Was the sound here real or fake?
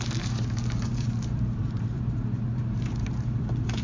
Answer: fake